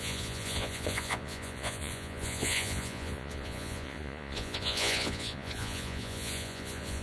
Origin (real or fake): fake